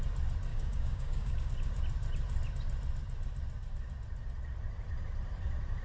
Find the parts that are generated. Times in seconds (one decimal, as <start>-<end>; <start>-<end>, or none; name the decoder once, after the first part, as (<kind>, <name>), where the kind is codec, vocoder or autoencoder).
0.5-1.5 (codec, DAC)